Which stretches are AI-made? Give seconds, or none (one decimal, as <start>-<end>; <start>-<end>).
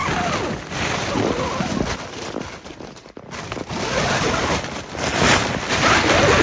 5.4-6.4